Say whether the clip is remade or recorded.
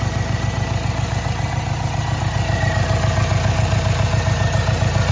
recorded